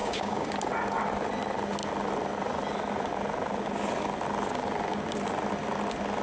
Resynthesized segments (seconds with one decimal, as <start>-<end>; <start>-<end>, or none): 0.0-0.5